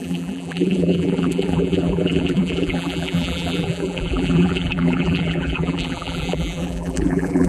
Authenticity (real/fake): fake